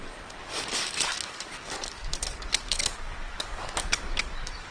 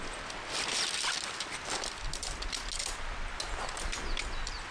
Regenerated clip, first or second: first